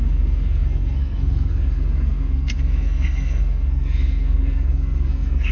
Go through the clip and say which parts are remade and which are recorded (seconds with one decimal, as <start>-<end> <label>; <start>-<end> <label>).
0.0-5.5 remade